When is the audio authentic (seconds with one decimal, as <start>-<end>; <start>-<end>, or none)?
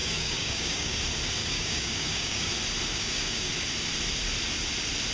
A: 1.0-1.4; 2.5-2.9; 3.5-5.1